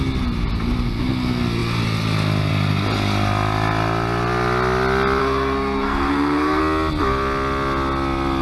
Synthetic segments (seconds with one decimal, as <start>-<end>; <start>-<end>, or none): 5.2-6.6

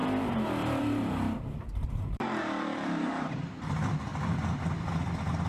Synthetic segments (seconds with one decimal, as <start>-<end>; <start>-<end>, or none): 0.0-3.3

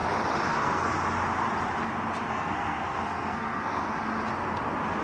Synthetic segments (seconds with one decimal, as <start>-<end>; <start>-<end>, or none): 0.5-0.9; 2.3-3.8